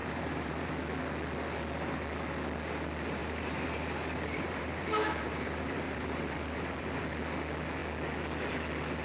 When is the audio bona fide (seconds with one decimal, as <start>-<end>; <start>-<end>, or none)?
0.7-3.2; 7.0-9.0